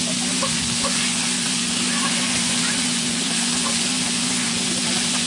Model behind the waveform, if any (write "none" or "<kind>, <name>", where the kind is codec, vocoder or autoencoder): vocoder, Vocos